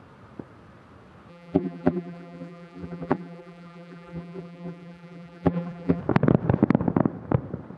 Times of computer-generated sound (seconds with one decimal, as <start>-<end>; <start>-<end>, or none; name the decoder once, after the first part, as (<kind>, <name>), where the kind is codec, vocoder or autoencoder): 1.3-6.0 (vocoder, BigVGAN v2)